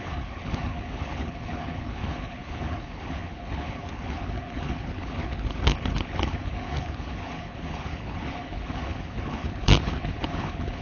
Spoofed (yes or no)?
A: yes